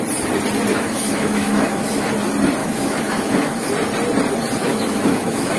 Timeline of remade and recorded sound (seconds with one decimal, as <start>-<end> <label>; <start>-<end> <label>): 0.0-0.7 recorded; 0.7-2.1 remade; 2.1-2.6 recorded; 2.6-3.7 remade; 3.7-4.6 recorded; 4.6-5.6 remade